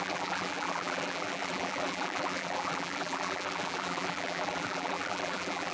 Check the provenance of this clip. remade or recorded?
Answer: remade